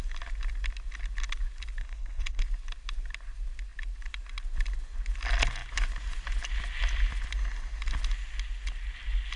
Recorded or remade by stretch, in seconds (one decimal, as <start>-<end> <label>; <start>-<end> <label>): 0.0-1.8 recorded; 1.8-2.4 remade; 2.4-9.4 recorded